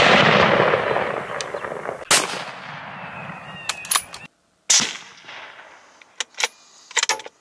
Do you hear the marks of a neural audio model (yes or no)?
no